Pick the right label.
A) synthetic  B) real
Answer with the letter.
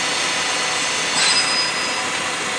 B